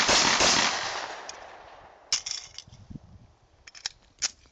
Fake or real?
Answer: real